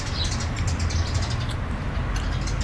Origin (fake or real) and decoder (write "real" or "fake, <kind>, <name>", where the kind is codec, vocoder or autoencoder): real